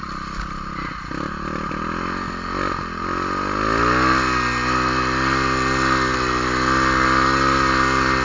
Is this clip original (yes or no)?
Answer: yes